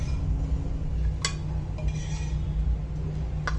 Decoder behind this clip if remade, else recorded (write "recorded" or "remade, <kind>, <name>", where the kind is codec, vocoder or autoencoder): recorded